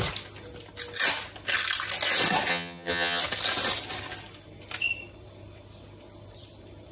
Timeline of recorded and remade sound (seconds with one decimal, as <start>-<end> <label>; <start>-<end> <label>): 0.0-2.5 recorded; 2.5-3.2 remade; 3.2-6.9 recorded